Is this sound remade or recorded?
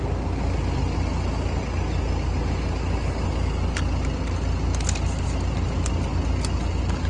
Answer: recorded